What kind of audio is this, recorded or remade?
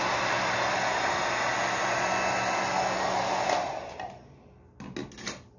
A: recorded